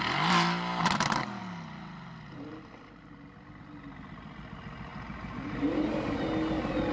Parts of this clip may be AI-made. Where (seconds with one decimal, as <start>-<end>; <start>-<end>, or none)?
none